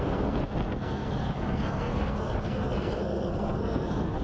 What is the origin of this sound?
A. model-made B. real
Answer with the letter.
A